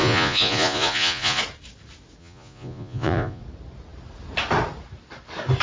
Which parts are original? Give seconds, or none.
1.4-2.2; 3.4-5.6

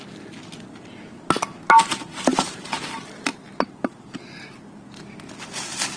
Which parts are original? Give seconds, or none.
0.0-2.1; 2.8-6.0

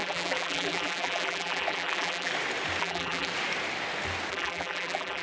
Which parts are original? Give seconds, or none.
2.3-2.8; 3.3-4.3

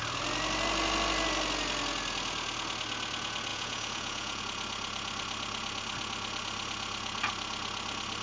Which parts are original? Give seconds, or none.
0.0-3.5; 4.4-8.2

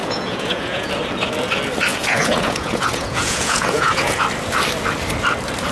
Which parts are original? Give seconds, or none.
0.9-1.9; 4.2-5.7

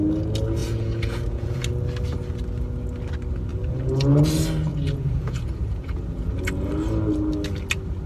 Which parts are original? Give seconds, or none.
0.0-0.6; 1.6-3.5; 4.3-4.7; 6.7-8.1